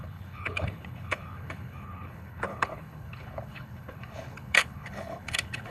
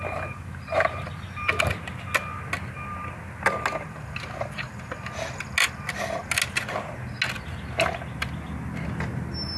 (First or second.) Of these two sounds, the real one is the second